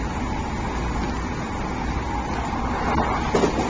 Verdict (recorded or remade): recorded